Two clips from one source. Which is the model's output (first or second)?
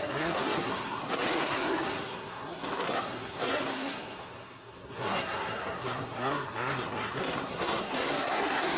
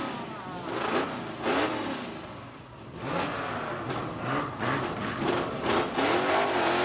first